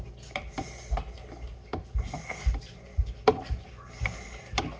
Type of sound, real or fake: real